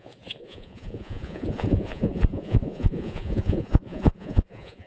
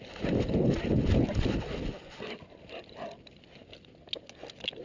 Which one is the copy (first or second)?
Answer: first